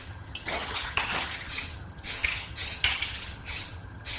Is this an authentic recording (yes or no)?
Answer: no